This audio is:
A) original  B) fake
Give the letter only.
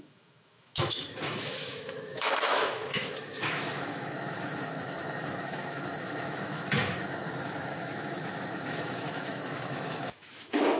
B